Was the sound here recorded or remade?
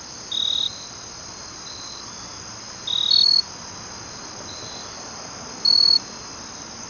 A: recorded